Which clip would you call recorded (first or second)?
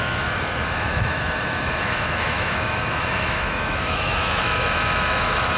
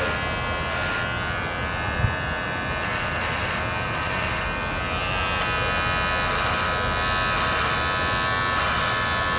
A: second